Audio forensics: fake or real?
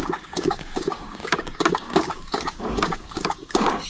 fake